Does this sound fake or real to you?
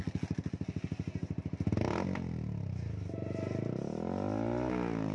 real